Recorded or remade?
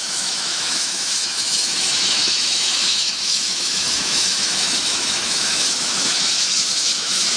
remade